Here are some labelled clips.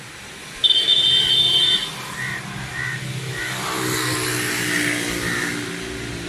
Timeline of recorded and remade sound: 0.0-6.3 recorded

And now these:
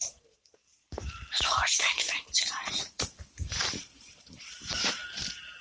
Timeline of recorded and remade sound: 0.0-5.0 remade; 5.0-5.6 recorded